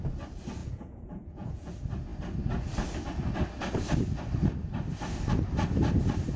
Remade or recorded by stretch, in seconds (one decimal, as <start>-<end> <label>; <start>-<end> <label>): 0.0-0.6 recorded; 0.6-1.7 remade; 1.7-6.4 recorded